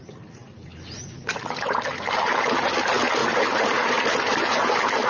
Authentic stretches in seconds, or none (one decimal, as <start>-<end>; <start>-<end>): 0.0-5.1